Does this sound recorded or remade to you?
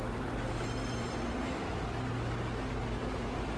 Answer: recorded